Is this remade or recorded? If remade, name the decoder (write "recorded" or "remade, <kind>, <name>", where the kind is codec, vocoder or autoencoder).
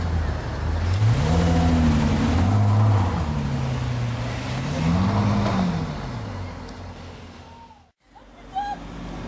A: recorded